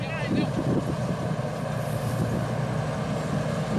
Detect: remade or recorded recorded